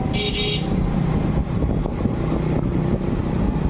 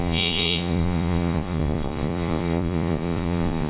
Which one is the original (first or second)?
first